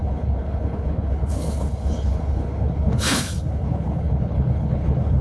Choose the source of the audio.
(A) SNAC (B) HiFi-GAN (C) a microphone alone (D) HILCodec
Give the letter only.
D